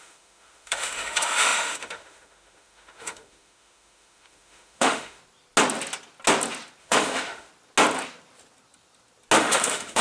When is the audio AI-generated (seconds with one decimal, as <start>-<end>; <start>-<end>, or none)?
0.0-5.2; 6.8-7.5; 9.4-10.0